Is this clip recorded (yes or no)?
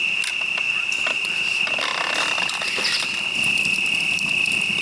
yes